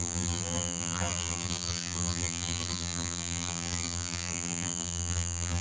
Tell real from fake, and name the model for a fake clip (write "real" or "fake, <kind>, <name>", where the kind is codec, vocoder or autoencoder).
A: fake, vocoder, BigVGAN v2